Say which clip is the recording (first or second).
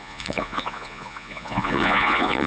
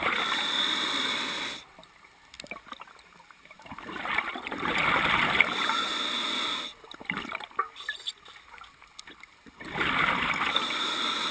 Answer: second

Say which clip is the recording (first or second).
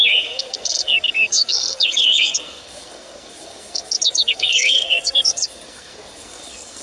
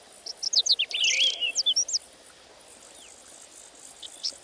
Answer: second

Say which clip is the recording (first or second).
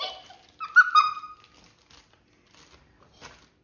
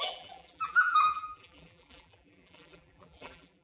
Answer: first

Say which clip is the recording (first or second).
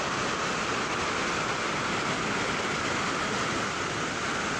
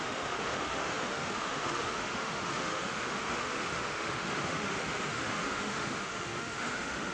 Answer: first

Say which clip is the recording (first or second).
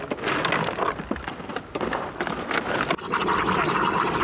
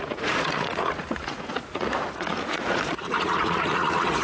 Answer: first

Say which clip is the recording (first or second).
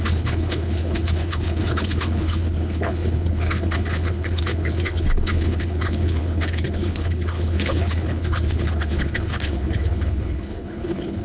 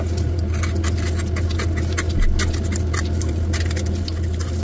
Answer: second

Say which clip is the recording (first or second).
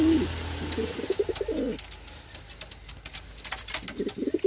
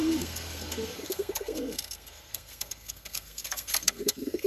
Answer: first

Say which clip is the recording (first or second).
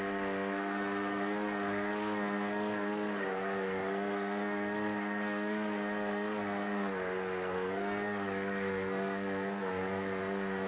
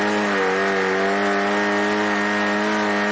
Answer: second